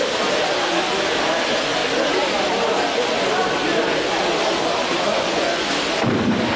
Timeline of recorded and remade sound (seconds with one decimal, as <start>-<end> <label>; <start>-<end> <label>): 0.0-5.1 recorded; 5.1-5.7 remade; 5.7-6.6 recorded